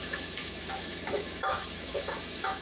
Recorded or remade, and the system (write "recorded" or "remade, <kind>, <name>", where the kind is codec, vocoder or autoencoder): remade, autoencoder, DAC-VAE